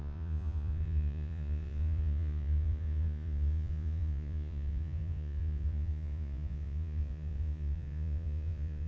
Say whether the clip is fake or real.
fake